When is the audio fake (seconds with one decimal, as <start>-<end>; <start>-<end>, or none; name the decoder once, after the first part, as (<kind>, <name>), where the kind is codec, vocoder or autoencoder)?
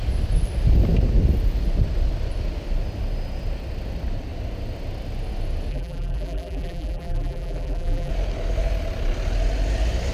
5.7-8.1 (vocoder, BigVGAN v2)